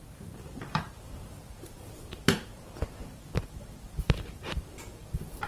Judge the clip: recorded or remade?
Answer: remade